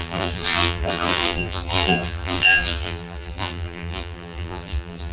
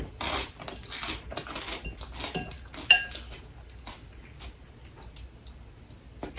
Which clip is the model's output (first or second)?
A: first